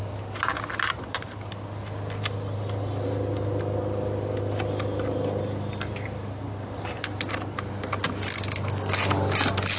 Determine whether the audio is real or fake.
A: fake